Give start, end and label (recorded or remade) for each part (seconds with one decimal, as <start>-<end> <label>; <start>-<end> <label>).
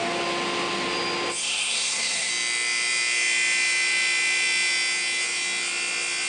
0.0-1.4 recorded; 1.4-2.3 remade; 2.3-6.3 recorded